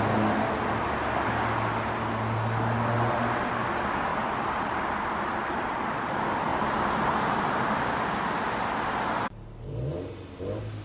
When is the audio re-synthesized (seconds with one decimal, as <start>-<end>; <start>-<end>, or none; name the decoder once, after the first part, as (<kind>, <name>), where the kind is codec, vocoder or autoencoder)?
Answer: 4.1-5.8 (vocoder, BigVGAN v2); 6.5-7.4